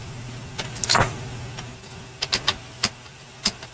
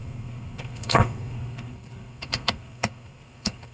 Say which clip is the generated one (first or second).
second